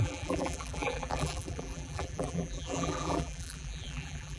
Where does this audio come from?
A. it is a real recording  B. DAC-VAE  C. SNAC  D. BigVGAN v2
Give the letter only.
D